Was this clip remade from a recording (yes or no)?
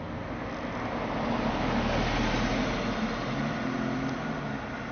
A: no